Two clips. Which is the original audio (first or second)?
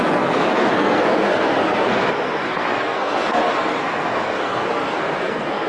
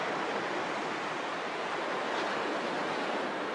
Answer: second